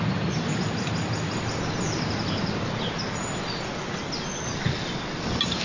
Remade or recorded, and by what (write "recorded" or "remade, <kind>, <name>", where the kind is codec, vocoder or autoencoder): recorded